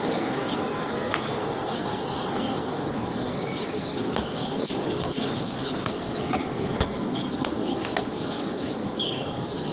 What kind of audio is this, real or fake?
fake